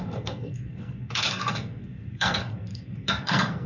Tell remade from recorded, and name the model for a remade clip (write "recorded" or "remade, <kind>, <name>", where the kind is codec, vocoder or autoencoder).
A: remade, codec, SNAC